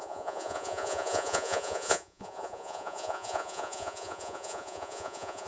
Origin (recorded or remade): remade